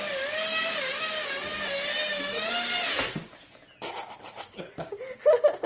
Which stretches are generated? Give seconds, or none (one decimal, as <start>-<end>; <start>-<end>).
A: none